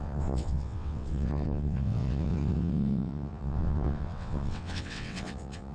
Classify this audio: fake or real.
fake